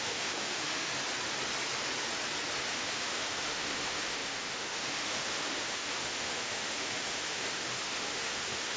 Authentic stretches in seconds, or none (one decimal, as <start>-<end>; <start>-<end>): 0.9-2.7